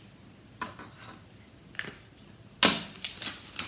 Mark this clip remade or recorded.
recorded